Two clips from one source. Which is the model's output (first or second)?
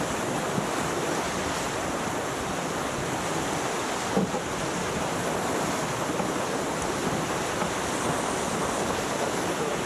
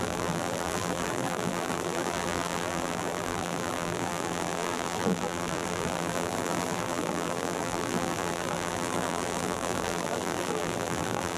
second